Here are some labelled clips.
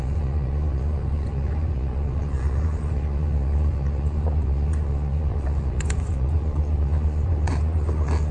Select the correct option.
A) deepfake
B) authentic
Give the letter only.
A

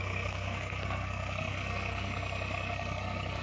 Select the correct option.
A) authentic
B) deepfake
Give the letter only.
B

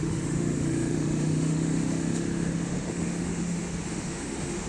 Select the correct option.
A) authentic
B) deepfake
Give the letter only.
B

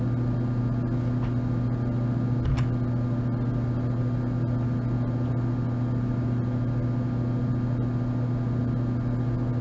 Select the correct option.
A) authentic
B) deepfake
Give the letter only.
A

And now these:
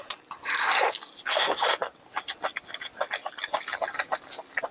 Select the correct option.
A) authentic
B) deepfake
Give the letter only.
A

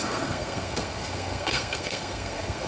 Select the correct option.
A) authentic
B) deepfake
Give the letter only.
B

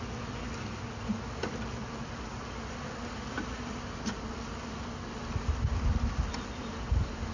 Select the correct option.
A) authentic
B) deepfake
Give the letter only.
A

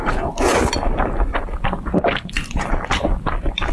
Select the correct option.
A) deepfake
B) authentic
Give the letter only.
A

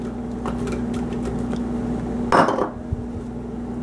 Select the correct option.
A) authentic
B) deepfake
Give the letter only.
A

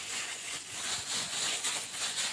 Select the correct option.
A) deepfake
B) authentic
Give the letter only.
A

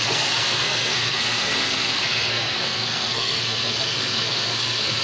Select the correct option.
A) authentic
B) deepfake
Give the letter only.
B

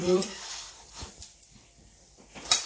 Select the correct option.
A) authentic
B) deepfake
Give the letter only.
B